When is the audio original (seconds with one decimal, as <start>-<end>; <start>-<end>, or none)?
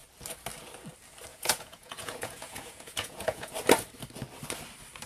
0.0-1.3; 3.5-5.1